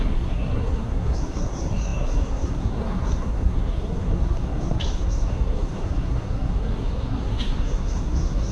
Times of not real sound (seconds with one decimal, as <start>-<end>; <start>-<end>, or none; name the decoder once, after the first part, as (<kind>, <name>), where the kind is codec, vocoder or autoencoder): 0.0-8.5 (codec, SNAC)